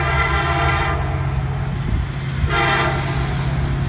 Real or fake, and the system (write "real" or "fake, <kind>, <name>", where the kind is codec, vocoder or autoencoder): real